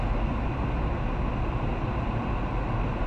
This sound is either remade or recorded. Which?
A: recorded